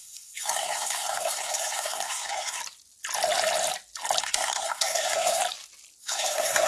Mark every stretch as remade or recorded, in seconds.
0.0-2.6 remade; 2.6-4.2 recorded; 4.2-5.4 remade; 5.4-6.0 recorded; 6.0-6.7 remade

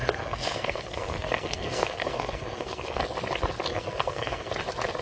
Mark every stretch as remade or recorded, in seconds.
0.0-3.0 remade; 3.0-3.7 recorded; 3.7-4.5 remade; 4.5-5.0 recorded

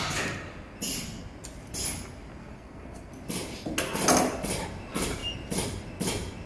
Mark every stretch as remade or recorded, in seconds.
0.0-2.4 recorded; 2.4-3.1 remade; 3.1-6.5 recorded

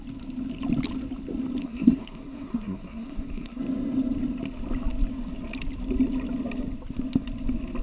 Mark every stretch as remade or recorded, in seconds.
0.0-1.6 recorded; 1.6-3.6 remade; 3.6-7.8 recorded